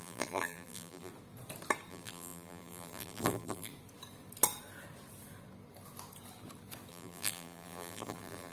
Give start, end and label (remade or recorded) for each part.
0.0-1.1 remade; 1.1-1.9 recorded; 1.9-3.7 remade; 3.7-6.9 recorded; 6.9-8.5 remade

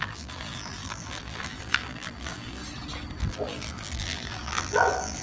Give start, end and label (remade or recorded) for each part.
0.0-2.6 remade; 2.6-3.2 recorded; 3.2-5.2 remade

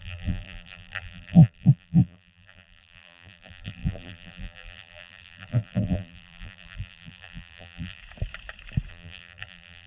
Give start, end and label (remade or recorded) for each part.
0.0-8.0 remade; 8.0-8.9 recorded; 8.9-9.9 remade

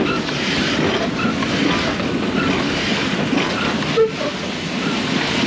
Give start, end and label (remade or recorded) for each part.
0.0-1.6 remade; 1.6-3.5 recorded; 3.5-5.5 remade

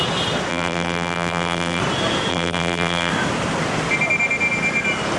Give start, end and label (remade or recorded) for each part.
0.0-0.5 recorded; 0.5-1.8 remade; 1.8-2.3 recorded; 2.3-3.1 remade; 3.1-5.2 recorded

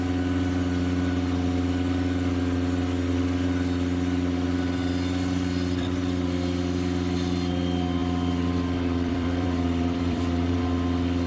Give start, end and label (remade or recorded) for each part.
0.0-8.0 recorded; 8.0-10.6 remade; 10.6-11.3 recorded

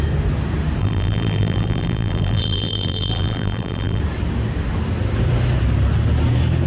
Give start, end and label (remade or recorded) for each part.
0.0-0.8 recorded; 0.8-4.0 remade; 4.0-6.7 recorded